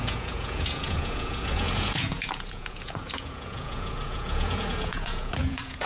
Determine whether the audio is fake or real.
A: fake